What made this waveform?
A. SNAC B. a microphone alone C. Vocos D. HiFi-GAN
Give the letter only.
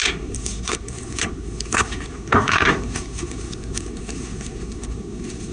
A